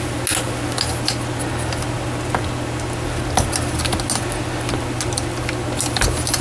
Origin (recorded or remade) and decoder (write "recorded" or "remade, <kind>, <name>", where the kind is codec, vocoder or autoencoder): recorded